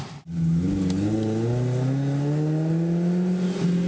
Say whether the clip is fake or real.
real